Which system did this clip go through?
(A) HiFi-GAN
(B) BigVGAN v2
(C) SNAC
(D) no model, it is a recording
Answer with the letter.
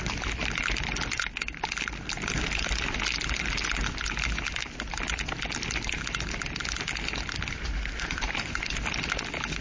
D